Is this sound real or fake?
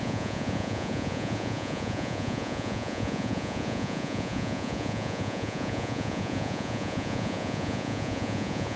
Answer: fake